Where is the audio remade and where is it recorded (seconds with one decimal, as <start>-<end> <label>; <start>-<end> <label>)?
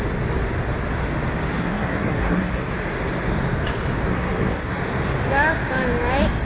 0.0-1.6 recorded; 1.6-2.7 remade; 2.7-4.1 recorded; 4.1-4.8 remade; 4.8-6.4 recorded